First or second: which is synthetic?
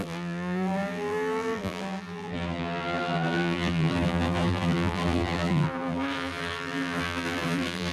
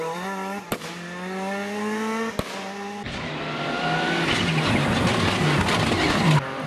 first